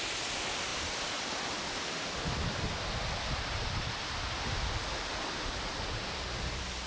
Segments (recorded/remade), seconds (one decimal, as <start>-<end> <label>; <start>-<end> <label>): 0.0-6.9 recorded